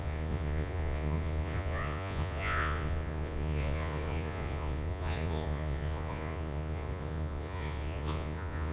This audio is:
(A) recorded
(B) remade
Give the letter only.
B